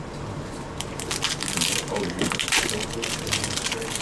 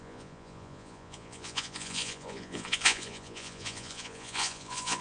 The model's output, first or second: second